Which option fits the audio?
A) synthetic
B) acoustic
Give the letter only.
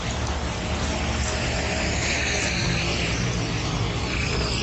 B